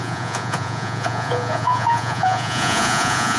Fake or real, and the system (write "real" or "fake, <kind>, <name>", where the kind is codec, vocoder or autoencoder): fake, vocoder, Vocos